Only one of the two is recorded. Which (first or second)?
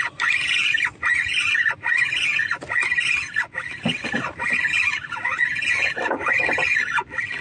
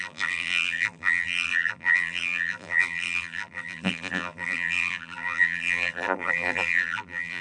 first